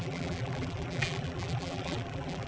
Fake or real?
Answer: fake